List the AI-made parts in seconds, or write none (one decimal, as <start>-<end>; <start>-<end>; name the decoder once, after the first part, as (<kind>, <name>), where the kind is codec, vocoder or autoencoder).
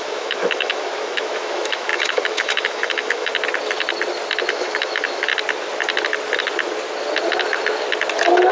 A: 0.0-3.3 (autoencoder, DAC-VAE); 4.5-5.3